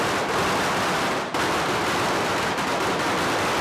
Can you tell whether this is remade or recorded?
recorded